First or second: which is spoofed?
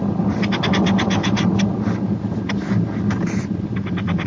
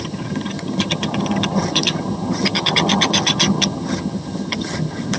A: second